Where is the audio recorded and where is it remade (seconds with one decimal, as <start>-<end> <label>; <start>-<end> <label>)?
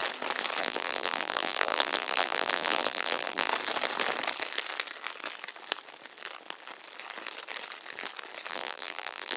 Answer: 0.0-0.6 recorded; 0.6-3.5 remade; 3.5-8.5 recorded; 8.5-9.4 remade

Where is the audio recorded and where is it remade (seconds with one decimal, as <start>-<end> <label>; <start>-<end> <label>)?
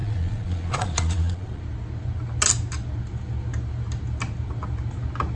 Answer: 0.0-1.6 remade; 1.6-5.4 recorded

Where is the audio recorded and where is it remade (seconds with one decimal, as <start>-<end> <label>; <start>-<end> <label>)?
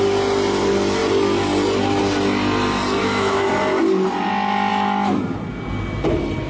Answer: 0.0-3.0 recorded; 3.0-3.5 remade; 3.5-6.5 recorded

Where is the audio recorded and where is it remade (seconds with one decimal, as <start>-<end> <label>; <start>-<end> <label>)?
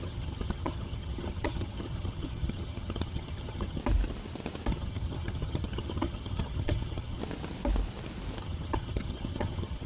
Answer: 0.0-3.8 remade; 3.8-4.7 recorded; 4.7-7.2 remade; 7.2-8.4 recorded; 8.4-9.9 remade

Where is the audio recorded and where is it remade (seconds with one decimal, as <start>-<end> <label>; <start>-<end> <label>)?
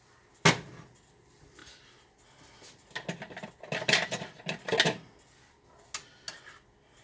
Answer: 0.0-7.0 recorded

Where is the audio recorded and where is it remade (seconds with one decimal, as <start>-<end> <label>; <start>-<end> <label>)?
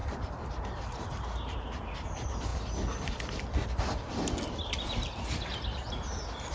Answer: 0.0-6.5 recorded